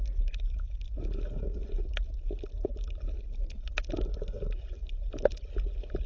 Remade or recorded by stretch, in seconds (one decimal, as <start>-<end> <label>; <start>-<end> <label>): 0.0-6.1 recorded